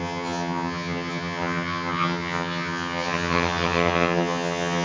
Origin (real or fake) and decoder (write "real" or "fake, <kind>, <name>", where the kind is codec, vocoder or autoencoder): fake, vocoder, HiFi-GAN